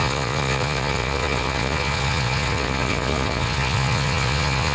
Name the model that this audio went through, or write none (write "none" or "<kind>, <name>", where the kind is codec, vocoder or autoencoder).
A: vocoder, Vocos